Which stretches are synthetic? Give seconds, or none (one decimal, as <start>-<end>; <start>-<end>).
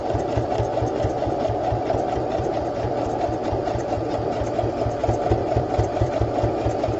0.0-2.9; 3.4-4.1; 5.4-6.1